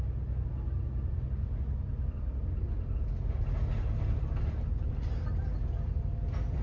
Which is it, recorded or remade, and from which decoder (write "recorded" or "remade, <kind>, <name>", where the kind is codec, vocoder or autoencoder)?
recorded